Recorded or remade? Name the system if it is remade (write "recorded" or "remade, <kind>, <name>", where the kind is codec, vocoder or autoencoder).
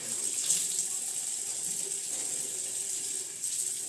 recorded